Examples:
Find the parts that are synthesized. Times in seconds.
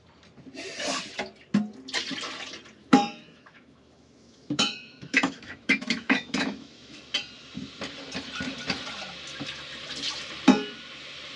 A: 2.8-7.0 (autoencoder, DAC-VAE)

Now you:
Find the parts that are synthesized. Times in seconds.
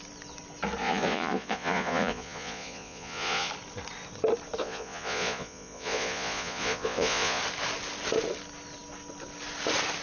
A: 0.8-3.5 (vocoder, Vocos); 4.6-7.4